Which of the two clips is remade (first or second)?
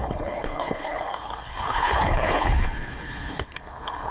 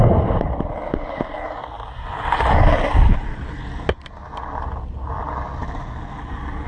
first